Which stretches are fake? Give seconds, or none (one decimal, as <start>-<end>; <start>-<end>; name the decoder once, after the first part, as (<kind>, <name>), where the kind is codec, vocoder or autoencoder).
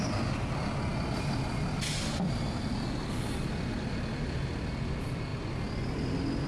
none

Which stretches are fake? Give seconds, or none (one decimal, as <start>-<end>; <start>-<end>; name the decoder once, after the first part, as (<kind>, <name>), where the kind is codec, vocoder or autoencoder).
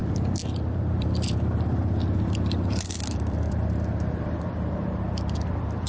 0.0-5.9 (vocoder, BigVGAN v2)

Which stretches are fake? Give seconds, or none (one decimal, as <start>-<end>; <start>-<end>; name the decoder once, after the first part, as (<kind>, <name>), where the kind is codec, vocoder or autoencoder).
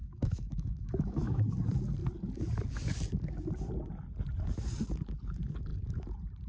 0.0-1.4 (autoencoder, DAC-VAE)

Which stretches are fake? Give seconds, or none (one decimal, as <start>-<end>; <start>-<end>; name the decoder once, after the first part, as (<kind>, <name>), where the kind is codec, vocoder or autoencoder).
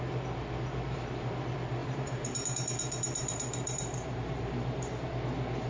1.8-5.1 (vocoder, BigVGAN v2)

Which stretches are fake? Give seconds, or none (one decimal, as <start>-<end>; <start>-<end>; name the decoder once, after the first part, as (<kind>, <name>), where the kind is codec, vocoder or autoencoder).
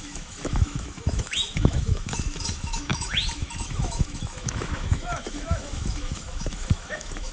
0.0-7.3 (autoencoder, DAC-VAE)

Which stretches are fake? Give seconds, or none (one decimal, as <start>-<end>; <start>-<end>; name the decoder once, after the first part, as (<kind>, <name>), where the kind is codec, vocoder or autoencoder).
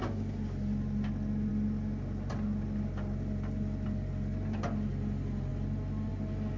5.5-6.1 (vocoder, BigVGAN v2)